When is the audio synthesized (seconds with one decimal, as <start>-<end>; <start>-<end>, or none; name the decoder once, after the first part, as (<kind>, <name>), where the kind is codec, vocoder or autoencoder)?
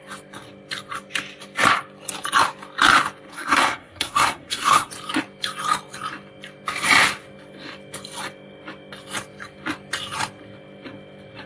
3.3-4.9 (codec, SNAC)